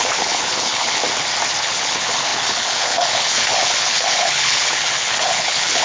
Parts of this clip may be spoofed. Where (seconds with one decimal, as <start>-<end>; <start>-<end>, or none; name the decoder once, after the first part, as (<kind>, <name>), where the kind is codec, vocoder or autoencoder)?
0.0-1.0 (codec, HILCodec); 1.6-5.8